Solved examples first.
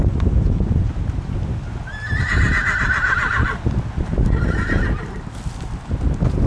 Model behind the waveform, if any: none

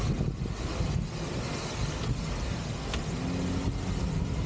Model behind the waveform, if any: none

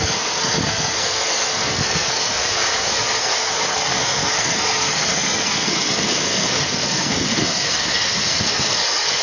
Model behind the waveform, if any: codec, SNAC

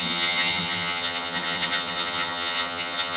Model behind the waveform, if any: vocoder, HiFi-GAN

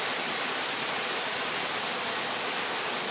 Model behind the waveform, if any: none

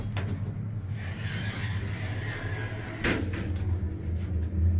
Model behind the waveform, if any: none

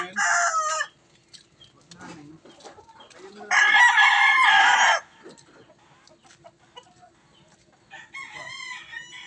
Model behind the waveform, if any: none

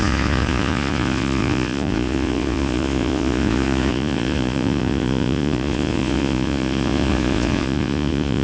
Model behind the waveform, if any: vocoder, Vocos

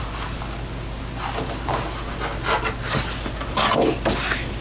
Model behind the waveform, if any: none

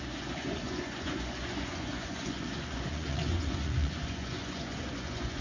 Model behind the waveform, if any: vocoder, Vocos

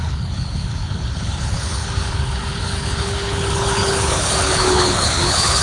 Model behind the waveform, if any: codec, HILCodec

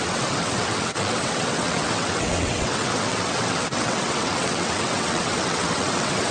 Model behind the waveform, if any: vocoder, WaveNeXt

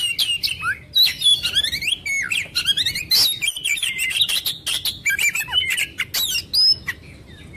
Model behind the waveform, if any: none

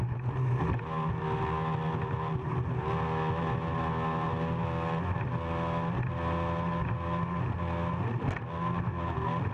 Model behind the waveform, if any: none